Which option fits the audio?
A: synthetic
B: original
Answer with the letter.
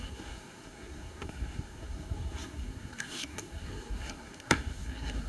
A